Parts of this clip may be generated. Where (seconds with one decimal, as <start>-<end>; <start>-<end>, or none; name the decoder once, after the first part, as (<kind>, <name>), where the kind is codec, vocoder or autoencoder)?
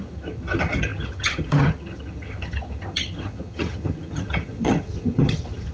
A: 0.0-5.7 (vocoder, HiFi-GAN)